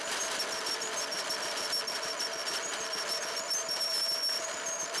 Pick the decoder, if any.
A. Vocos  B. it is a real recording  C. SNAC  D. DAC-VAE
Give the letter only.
B